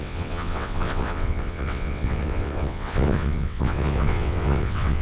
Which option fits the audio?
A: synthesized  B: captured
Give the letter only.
A